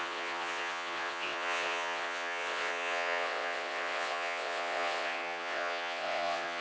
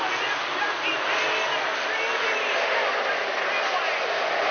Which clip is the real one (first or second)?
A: second